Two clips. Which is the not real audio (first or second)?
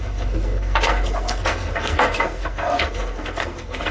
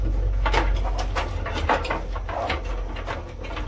first